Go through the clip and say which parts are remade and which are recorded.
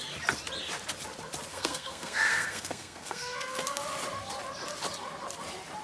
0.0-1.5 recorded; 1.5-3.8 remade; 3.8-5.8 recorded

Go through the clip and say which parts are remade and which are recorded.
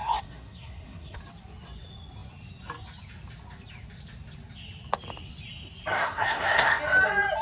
0.0-1.2 remade; 1.2-5.9 recorded; 5.9-6.8 remade; 6.8-7.4 recorded